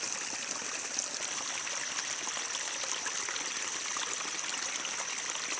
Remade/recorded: recorded